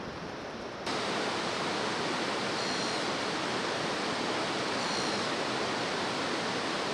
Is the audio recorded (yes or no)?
yes